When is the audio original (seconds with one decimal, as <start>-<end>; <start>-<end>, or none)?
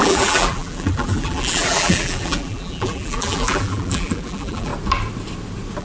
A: 4.7-5.8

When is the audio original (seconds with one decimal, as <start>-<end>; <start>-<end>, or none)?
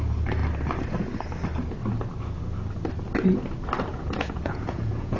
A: 0.0-3.9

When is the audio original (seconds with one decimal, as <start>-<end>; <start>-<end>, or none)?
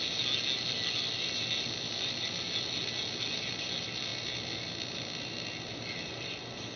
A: 0.0-6.8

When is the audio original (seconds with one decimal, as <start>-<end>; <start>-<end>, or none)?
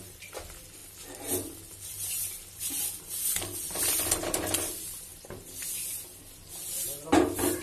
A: 0.0-5.1; 6.2-7.6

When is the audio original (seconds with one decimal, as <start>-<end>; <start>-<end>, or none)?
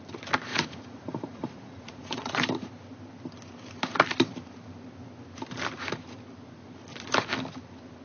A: 0.0-0.5; 2.4-8.0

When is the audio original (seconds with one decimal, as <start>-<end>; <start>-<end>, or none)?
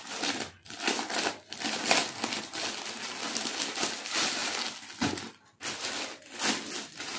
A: 0.0-7.2